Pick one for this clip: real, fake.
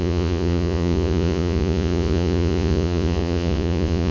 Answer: fake